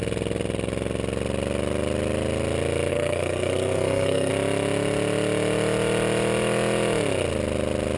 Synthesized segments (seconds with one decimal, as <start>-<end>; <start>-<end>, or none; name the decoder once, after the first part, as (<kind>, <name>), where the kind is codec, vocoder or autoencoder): 2.9-4.3 (codec, SNAC)